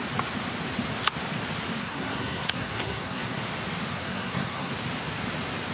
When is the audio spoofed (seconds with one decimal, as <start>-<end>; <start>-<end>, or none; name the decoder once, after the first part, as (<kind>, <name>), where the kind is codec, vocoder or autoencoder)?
1.8-3.4 (codec, SNAC); 3.9-4.7